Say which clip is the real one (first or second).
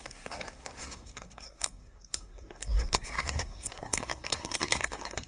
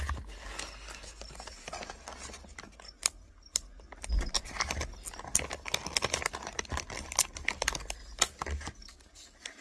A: second